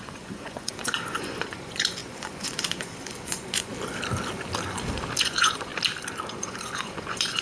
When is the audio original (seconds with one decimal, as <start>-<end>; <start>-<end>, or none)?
3.7-5.2; 5.7-6.3